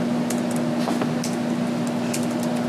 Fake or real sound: real